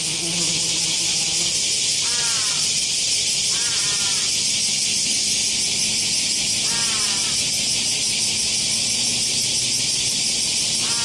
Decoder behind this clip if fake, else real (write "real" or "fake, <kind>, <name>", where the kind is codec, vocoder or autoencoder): real